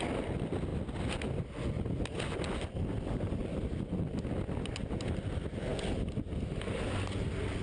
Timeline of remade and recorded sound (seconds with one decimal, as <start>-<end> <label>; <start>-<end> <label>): 0.0-7.6 recorded